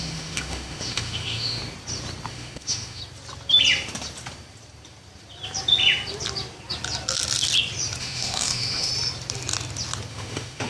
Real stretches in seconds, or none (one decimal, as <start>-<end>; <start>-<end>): 1.6-2.3; 3.0-8.0; 8.9-10.1